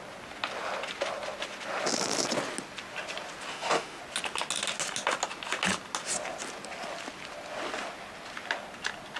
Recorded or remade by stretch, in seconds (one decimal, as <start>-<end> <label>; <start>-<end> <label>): 0.0-3.5 recorded; 3.5-4.0 remade; 4.0-9.2 recorded